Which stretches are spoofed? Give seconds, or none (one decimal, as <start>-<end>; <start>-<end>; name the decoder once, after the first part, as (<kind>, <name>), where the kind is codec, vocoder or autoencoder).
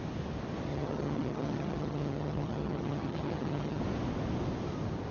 0.7-3.8 (vocoder, HiFi-GAN)